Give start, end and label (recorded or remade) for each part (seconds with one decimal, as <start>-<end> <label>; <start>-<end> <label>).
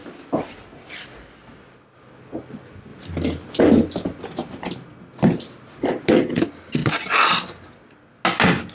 0.0-8.7 recorded